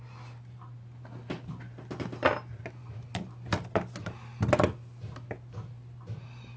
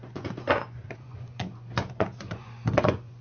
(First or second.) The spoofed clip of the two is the second